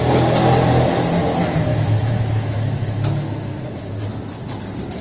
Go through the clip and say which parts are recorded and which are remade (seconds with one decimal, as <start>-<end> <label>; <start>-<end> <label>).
0.0-1.7 recorded; 1.7-4.6 remade; 4.6-5.0 recorded